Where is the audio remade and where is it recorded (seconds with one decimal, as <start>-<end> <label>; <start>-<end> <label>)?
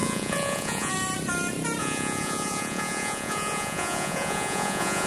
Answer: 0.0-0.9 remade; 0.9-1.8 recorded; 1.8-5.1 remade